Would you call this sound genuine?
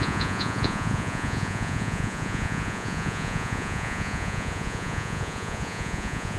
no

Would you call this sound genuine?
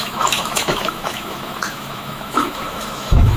no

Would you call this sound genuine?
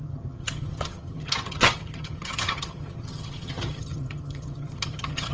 no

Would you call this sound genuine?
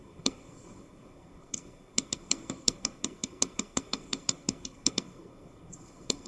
no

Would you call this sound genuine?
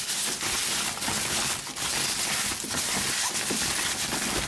yes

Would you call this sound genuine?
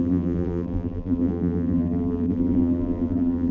no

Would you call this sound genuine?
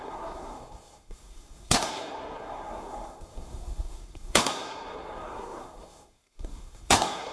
no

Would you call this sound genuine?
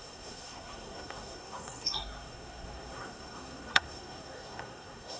no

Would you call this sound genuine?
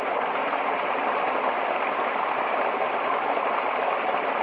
yes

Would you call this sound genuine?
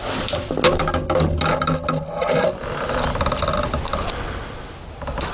yes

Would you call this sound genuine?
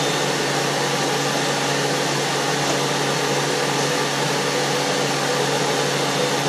yes